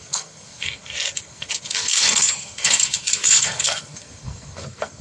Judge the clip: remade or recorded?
remade